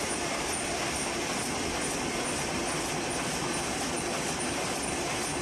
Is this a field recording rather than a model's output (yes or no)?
yes